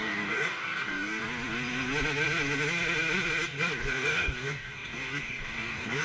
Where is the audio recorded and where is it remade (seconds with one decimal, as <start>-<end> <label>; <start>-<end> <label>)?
0.0-1.2 remade; 1.2-3.8 recorded; 3.8-6.0 remade